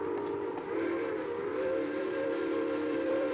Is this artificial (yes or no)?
yes